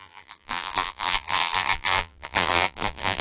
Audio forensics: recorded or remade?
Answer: remade